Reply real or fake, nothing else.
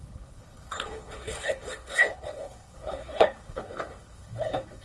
fake